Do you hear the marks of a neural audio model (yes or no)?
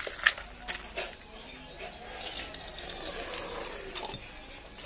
no